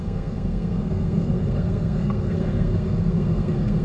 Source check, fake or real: fake